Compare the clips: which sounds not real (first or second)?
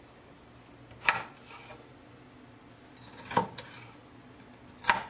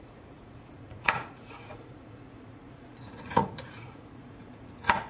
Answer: second